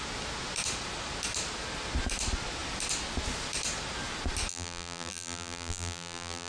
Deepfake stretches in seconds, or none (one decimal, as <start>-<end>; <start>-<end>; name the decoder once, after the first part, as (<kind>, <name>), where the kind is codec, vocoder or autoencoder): 4.5-6.5 (vocoder, BigVGAN v2)

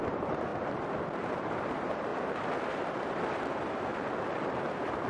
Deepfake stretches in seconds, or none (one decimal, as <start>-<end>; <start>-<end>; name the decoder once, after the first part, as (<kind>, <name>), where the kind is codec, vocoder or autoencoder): 0.0-0.5 (vocoder, BigVGAN v2); 1.4-2.1; 3.1-3.9; 4.5-5.1